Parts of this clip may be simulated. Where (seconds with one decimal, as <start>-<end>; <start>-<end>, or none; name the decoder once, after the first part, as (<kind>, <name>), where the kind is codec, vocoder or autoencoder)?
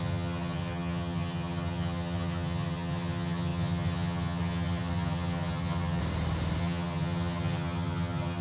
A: 0.0-6.0 (vocoder, HiFi-GAN); 6.6-8.4